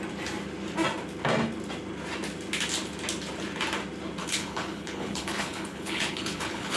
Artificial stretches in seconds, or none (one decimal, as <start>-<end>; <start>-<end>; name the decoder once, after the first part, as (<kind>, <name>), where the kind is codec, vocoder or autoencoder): 4.2-6.8 (codec, HILCodec)